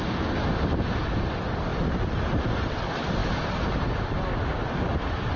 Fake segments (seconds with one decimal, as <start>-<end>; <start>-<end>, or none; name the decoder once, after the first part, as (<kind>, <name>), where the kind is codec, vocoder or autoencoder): 1.7-2.4 (vocoder, BigVGAN v2)